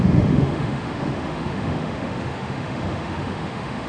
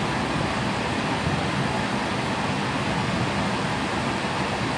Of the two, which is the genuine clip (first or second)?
second